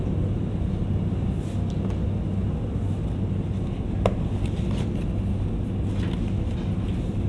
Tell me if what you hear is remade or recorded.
recorded